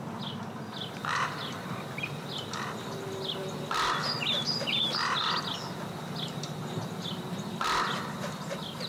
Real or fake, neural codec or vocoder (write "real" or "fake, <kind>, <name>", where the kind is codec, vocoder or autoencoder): real